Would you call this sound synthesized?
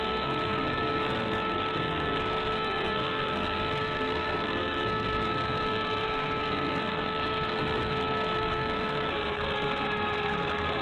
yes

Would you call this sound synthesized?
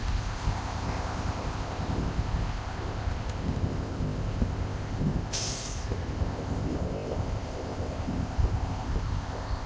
yes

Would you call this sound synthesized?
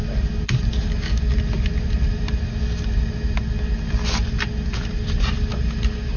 no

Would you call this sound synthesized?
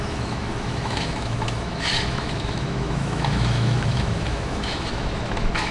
yes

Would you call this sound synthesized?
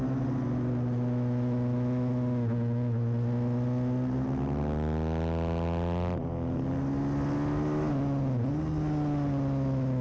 no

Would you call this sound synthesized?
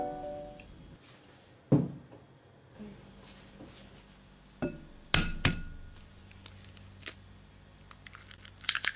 no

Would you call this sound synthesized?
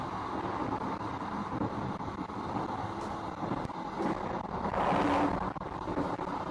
no